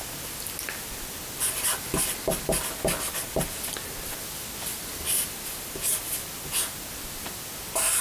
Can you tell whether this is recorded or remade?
recorded